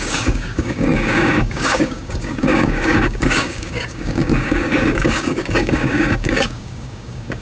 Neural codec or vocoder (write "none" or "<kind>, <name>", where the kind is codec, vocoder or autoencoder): codec, DAC